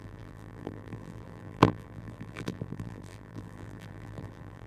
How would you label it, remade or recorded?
remade